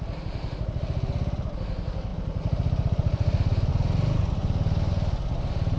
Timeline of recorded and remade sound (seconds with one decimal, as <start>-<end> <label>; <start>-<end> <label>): 0.0-5.8 recorded